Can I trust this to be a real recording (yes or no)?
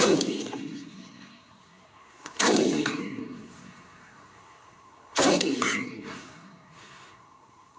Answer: no